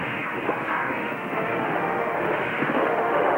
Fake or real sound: fake